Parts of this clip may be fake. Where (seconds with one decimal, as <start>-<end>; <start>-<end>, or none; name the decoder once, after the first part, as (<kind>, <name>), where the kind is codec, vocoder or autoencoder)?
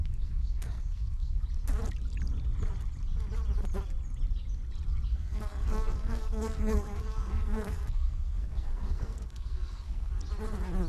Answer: 0.0-1.4 (codec, SNAC); 5.1-10.1